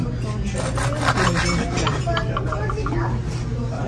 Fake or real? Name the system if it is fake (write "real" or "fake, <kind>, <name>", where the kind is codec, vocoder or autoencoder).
real